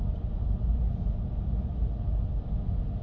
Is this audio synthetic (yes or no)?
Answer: no